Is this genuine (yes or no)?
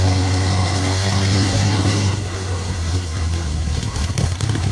no